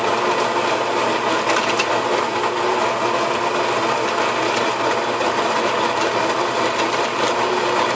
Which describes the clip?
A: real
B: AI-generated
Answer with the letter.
A